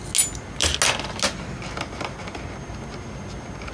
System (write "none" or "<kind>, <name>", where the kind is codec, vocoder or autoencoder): none